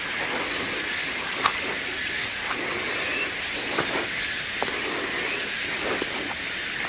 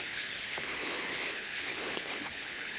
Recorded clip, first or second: first